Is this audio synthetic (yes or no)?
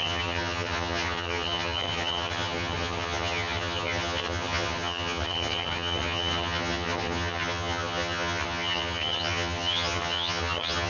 yes